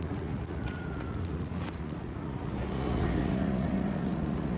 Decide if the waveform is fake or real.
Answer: fake